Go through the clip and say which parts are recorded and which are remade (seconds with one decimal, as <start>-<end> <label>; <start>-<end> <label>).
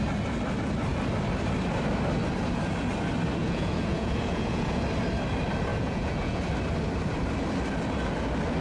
0.0-3.4 recorded; 3.4-4.8 remade; 4.8-5.7 recorded; 5.7-6.5 remade; 6.5-8.6 recorded